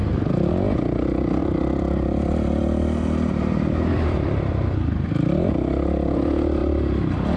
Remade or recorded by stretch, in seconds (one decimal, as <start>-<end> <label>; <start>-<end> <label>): 0.0-0.5 remade; 0.5-1.4 recorded; 1.4-5.5 remade; 5.5-7.4 recorded